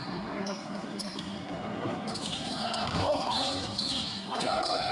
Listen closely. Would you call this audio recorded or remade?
remade